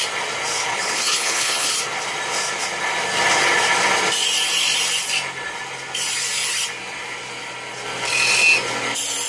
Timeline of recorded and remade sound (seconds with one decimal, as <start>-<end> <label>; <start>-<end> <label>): 0.0-0.7 recorded; 0.7-1.7 remade; 1.7-9.3 recorded